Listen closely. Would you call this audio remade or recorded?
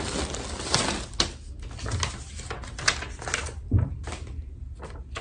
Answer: recorded